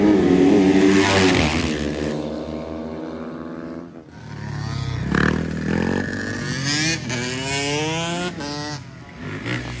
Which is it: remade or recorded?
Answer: recorded